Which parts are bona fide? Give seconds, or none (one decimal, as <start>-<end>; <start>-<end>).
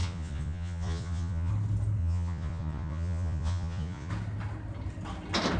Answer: 1.5-2.0; 4.1-5.6